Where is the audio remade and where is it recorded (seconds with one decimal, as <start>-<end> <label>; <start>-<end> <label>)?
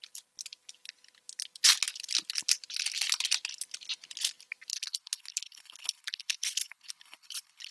0.0-4.7 recorded; 4.7-7.7 remade